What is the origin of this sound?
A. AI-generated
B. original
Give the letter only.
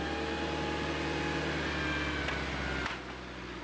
B